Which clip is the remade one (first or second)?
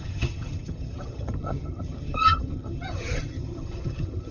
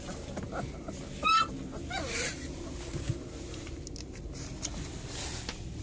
first